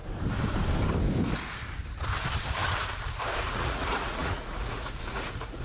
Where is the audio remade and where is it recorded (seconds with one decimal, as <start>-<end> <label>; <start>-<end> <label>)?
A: 0.0-3.4 recorded; 3.4-5.6 remade